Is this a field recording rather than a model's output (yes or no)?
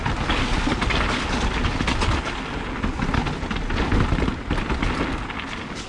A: yes